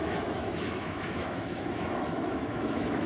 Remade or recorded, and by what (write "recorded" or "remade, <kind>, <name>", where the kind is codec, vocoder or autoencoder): remade, autoencoder, DAC-VAE